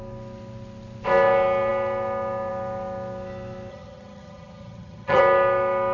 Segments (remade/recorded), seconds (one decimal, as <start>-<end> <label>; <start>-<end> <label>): 0.0-3.7 recorded; 3.7-5.2 remade; 5.2-5.9 recorded